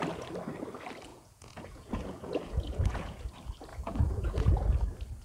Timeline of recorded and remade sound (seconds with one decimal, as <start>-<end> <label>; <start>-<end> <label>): 0.0-1.1 recorded; 1.1-3.3 remade; 3.3-3.7 recorded; 3.7-4.5 remade; 4.5-5.2 recorded